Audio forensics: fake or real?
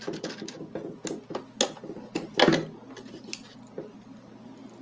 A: real